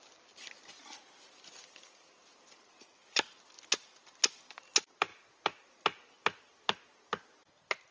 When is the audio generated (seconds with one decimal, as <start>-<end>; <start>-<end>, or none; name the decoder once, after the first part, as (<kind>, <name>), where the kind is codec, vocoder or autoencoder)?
none